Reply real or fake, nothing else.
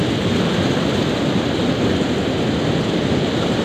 real